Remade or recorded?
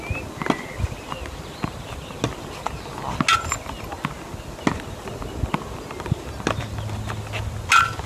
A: recorded